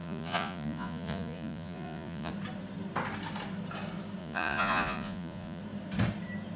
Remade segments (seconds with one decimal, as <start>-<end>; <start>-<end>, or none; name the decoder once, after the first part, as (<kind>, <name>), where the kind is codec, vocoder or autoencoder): 0.0-2.3 (vocoder, Vocos); 4.2-5.6